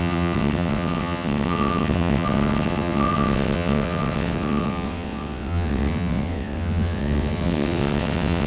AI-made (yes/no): yes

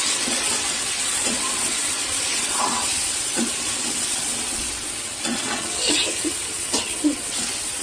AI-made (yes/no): yes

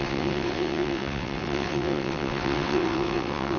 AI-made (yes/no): yes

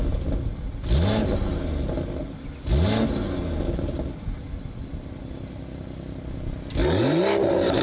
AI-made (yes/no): no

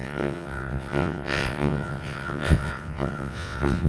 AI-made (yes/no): yes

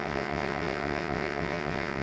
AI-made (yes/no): yes